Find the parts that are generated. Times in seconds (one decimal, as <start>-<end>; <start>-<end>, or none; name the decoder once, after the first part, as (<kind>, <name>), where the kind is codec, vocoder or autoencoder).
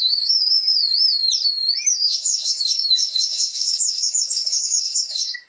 0.0-0.8 (autoencoder, DAC-VAE); 1.9-5.5